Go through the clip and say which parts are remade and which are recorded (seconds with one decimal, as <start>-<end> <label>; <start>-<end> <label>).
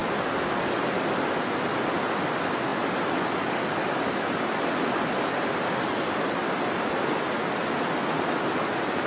0.0-9.1 recorded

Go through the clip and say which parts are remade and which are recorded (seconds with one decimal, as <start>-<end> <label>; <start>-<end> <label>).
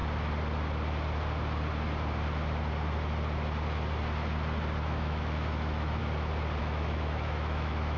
0.0-4.8 recorded; 4.8-6.0 remade; 6.0-6.6 recorded; 6.6-8.0 remade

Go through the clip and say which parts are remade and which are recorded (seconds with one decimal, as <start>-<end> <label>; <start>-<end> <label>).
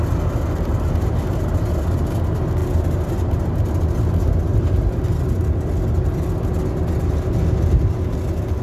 0.0-8.6 recorded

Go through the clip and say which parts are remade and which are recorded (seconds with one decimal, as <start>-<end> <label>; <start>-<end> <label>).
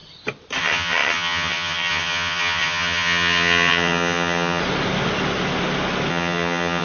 0.0-0.6 recorded; 0.6-4.6 remade; 4.6-6.1 recorded; 6.1-6.8 remade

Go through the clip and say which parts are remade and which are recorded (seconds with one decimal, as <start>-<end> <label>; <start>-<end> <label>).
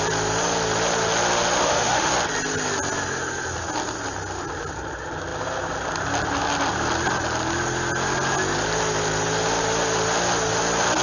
0.0-1.6 recorded; 1.6-2.1 remade; 2.1-11.0 recorded